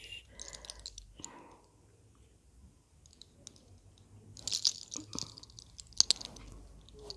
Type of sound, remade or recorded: recorded